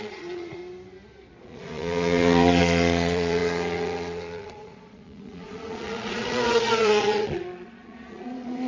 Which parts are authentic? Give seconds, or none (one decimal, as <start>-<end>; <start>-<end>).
0.6-1.2